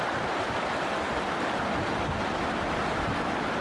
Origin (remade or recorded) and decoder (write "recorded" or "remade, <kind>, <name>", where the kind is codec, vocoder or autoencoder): recorded